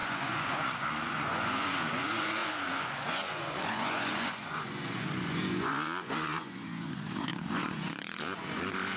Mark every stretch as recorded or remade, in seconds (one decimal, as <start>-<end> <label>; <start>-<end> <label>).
0.0-9.0 remade